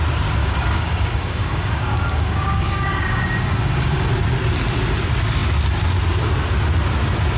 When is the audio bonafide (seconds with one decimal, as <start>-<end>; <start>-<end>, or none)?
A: 0.0-0.4; 4.1-7.4